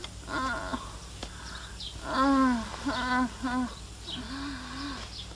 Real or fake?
real